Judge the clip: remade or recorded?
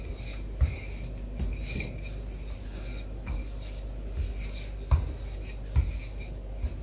recorded